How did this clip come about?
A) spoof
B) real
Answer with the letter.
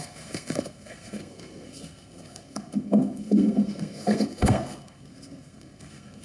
A